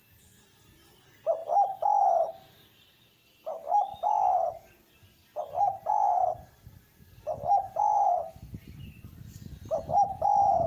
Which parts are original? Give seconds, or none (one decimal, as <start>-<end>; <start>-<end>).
0.0-10.7